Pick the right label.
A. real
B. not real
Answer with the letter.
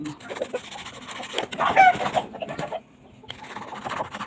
A